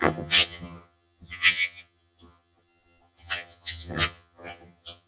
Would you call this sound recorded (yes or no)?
no